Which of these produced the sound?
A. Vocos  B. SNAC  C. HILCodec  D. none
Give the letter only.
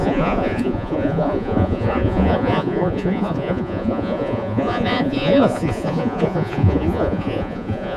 A